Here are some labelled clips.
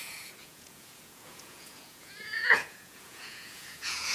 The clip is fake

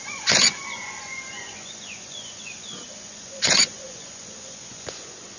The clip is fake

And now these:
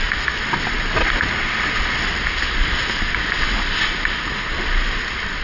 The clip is real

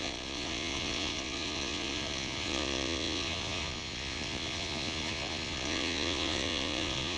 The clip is fake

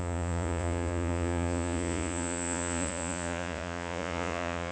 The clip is fake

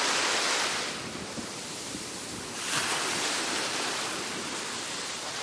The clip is real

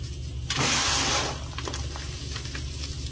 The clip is real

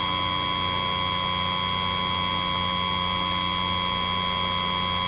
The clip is real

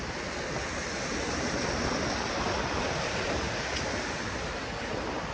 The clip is real